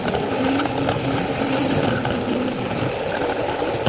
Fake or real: real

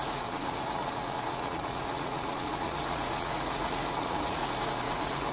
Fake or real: fake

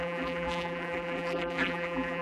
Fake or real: fake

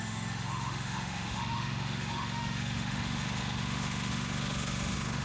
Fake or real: fake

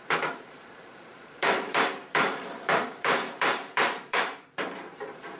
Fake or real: fake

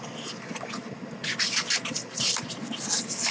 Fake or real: real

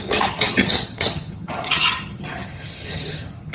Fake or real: fake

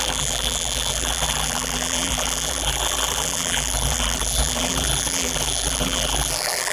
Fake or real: fake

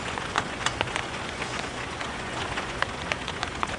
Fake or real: fake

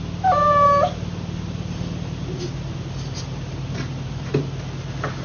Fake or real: real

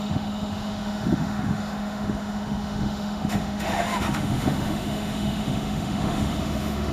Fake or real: fake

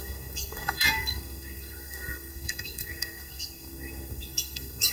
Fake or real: fake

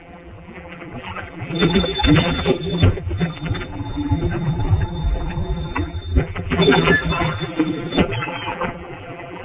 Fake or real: fake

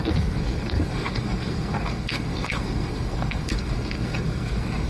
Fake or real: fake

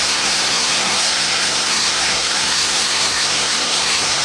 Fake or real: fake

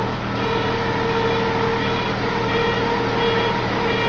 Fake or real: real